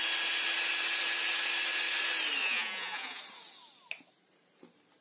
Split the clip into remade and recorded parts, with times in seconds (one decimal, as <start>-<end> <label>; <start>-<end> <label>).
0.0-2.4 recorded; 2.4-3.2 remade; 3.2-5.0 recorded